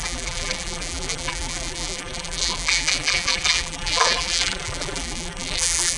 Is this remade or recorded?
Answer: remade